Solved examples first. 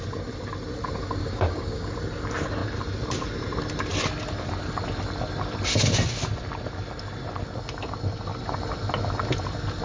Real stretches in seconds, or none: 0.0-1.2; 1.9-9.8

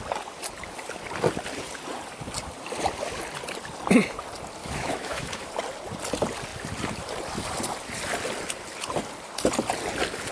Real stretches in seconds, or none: 0.0-4.6; 5.5-10.3

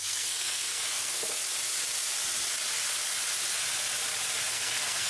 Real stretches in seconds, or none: 1.4-4.5

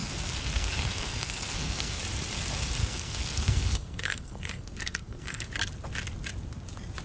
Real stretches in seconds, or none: 2.0-2.8; 5.5-7.0

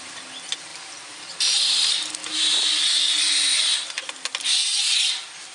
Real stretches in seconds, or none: 0.0-0.7; 2.1-5.5

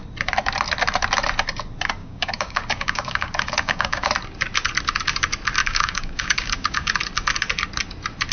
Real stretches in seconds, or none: 0.0-2.0; 4.1-5.6; 6.9-8.3

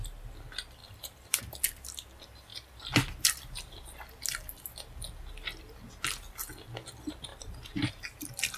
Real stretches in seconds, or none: 0.0-0.8; 1.4-2.5; 4.2-8.6